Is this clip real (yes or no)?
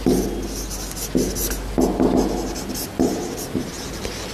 yes